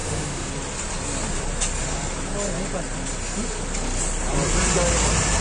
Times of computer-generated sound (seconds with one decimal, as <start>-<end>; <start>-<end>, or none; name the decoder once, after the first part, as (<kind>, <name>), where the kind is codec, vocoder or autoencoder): 0.0-0.5 (autoencoder, DAC-VAE)